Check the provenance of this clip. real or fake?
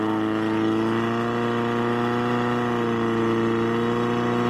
real